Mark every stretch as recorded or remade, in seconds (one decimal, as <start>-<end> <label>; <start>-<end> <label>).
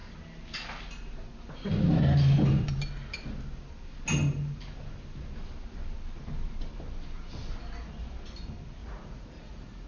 0.0-8.8 recorded; 8.8-9.9 remade